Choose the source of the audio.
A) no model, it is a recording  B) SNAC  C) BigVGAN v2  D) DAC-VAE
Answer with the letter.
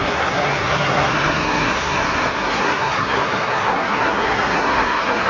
B